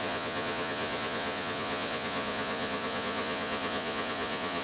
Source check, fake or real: fake